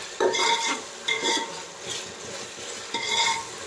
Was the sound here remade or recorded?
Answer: remade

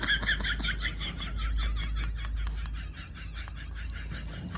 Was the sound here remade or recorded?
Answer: recorded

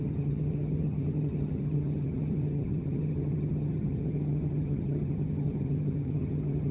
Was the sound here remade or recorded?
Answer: remade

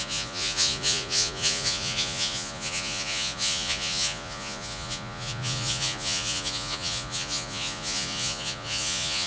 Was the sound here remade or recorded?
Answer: remade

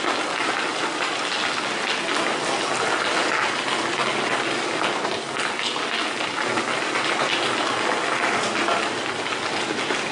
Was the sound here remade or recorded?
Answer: recorded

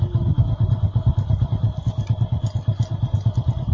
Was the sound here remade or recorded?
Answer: recorded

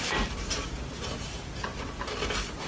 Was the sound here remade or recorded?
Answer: recorded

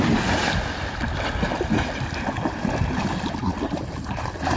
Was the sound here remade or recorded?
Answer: recorded